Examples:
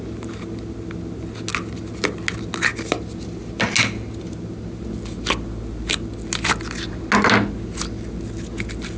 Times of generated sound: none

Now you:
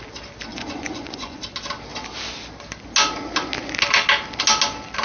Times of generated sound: 0.5-1.4 (vocoder, Vocos)